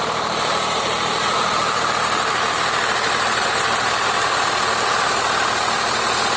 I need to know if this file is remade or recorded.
recorded